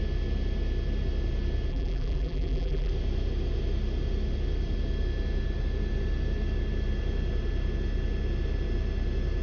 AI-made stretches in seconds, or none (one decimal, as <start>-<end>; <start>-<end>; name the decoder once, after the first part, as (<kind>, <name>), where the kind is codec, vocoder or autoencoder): 1.7-2.9 (vocoder, BigVGAN v2)